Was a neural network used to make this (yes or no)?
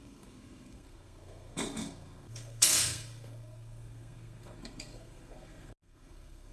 yes